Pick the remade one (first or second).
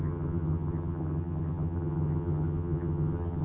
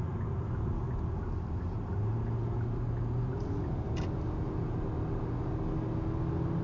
first